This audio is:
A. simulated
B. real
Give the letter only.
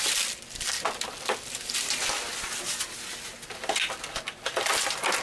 B